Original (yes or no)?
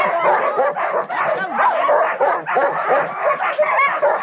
yes